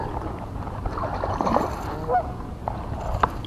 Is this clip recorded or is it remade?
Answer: recorded